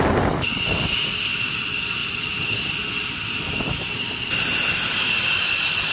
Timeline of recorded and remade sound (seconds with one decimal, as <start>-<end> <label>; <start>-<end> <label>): 0.0-5.9 recorded